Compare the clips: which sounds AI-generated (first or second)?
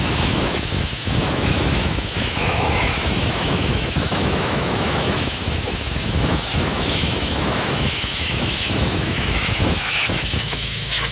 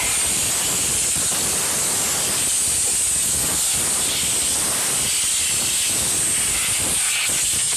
first